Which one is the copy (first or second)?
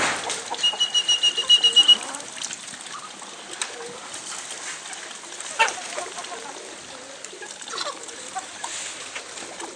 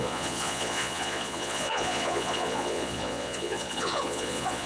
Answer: second